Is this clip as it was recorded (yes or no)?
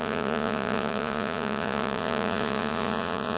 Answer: no